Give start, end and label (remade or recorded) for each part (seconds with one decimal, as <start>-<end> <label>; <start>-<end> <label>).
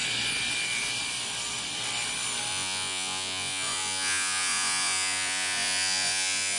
0.0-2.5 recorded; 2.5-6.6 remade